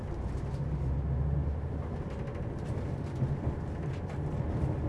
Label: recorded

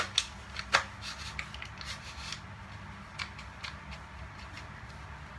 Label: recorded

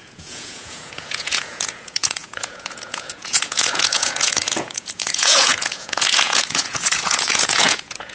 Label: remade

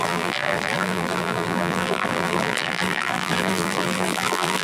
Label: remade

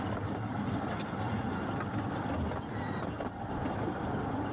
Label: recorded